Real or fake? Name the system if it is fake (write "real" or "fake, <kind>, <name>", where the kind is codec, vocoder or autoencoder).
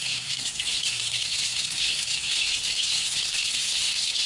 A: fake, codec, SNAC